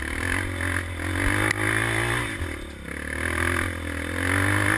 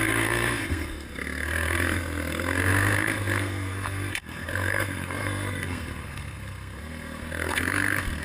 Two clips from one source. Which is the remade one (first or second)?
second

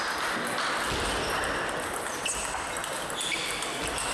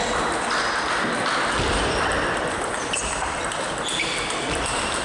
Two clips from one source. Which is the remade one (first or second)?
second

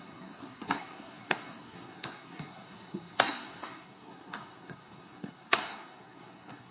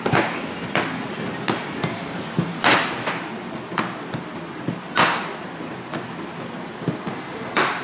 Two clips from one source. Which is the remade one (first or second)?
first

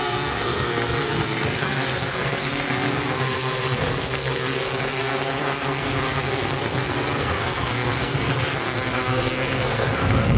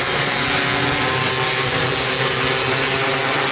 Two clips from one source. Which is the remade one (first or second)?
first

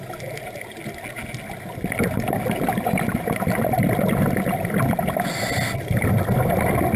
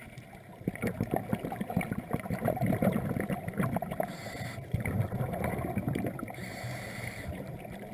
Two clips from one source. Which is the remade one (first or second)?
second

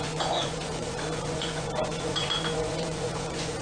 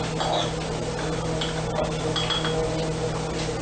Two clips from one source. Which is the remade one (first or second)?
first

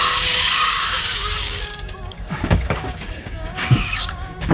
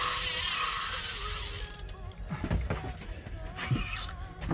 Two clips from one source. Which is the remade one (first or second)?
first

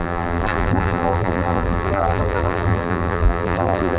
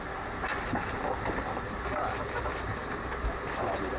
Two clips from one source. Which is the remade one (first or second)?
first